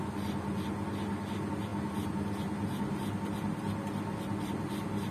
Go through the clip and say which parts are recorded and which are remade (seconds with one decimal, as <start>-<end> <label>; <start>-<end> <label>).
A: 0.0-5.1 recorded